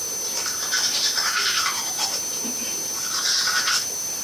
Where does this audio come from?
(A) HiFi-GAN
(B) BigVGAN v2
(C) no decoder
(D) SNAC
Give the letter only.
B